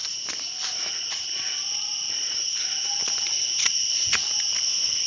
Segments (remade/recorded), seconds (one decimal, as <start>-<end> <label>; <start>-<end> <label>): 0.0-5.1 recorded